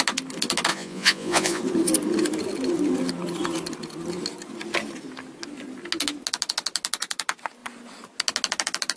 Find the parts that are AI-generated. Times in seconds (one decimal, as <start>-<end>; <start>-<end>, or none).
0.7-1.6